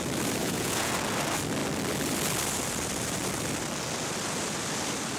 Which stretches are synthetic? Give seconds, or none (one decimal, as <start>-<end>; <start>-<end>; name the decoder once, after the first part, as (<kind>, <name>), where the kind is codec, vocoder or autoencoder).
0.4-0.9 (vocoder, Vocos)